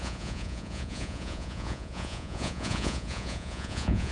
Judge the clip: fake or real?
fake